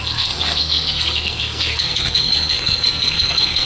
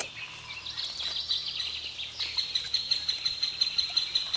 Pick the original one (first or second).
second